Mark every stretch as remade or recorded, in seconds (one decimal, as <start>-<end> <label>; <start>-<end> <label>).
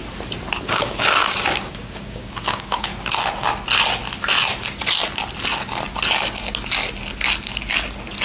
0.0-0.7 recorded; 0.7-2.9 remade; 2.9-8.2 recorded